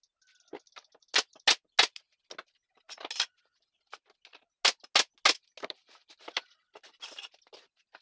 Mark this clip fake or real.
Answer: real